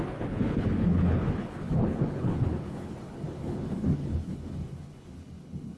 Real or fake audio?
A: fake